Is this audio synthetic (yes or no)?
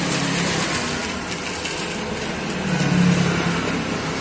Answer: no